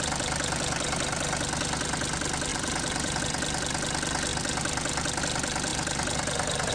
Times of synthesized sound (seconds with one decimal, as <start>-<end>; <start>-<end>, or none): 2.5-3.2; 5.7-6.7